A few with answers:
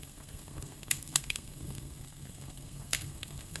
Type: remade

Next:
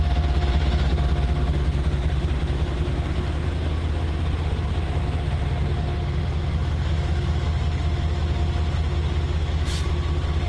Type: recorded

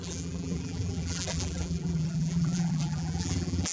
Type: remade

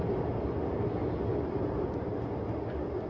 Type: recorded